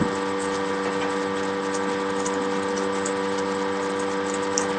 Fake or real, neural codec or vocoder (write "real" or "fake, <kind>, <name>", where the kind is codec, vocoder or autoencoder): real